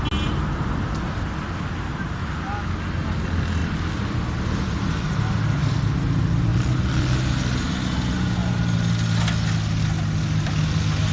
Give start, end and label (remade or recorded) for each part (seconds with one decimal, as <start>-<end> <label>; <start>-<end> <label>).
0.0-11.1 recorded